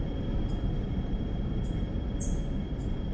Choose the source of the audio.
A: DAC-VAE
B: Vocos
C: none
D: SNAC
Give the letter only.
C